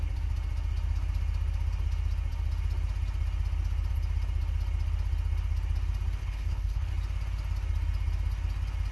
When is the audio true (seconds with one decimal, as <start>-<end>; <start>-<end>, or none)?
0.0-6.2; 6.9-8.9